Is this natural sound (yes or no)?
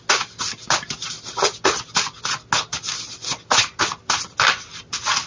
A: yes